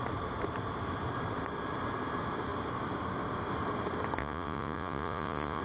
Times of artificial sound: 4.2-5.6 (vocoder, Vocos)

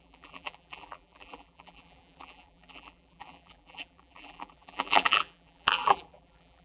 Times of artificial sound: 0.0-6.6 (vocoder, BigVGAN v2)